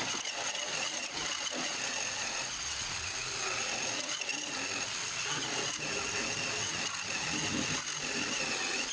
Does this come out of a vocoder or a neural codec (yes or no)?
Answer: no